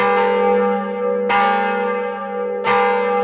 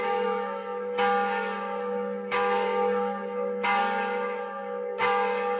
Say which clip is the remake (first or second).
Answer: second